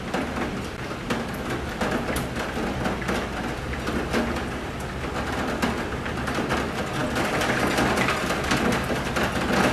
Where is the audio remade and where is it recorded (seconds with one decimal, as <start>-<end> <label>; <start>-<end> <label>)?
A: 0.0-9.7 recorded